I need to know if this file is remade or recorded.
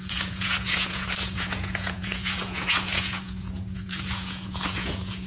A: remade